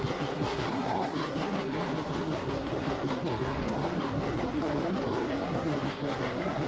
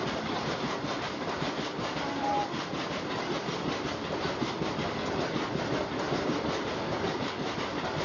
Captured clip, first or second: second